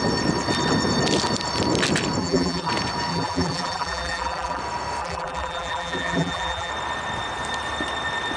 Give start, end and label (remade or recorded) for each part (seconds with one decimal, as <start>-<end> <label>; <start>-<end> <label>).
0.0-2.2 recorded; 2.2-2.7 remade; 2.7-3.1 recorded; 3.1-4.6 remade; 4.6-5.0 recorded; 5.0-6.7 remade; 6.7-8.4 recorded